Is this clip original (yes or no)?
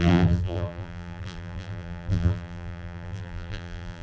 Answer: no